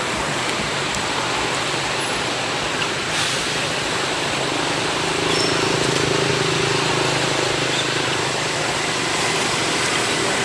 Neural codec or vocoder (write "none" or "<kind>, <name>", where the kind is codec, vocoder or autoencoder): none